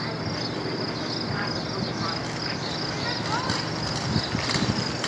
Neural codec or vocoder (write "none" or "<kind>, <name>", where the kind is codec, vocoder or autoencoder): none